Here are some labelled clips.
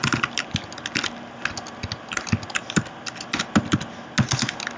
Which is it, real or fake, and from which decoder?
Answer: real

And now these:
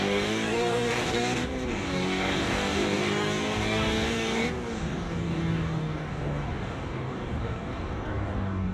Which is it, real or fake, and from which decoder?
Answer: fake, codec, DAC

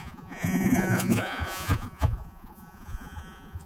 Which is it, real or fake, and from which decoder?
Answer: fake, vocoder, Vocos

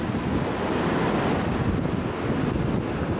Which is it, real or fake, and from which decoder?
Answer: real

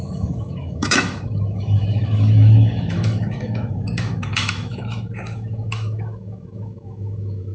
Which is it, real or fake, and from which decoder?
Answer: fake, autoencoder, DAC-VAE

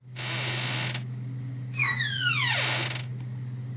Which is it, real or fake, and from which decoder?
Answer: real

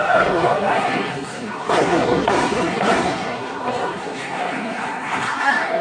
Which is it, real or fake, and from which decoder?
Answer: fake, codec, SNAC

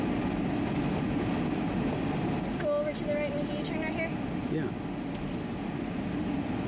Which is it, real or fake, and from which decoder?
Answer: real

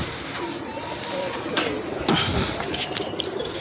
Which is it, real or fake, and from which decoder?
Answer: real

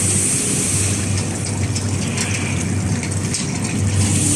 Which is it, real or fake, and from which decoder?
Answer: real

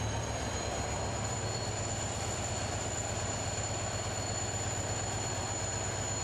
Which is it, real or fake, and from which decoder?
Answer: fake, vocoder, BigVGAN v2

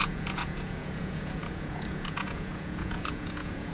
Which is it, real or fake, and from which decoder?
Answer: fake, vocoder, Vocos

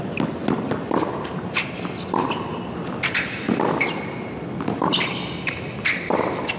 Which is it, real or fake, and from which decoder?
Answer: real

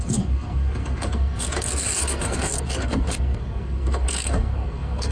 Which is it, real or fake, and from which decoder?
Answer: fake, codec, SNAC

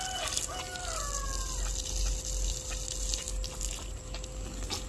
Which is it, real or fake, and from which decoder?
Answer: real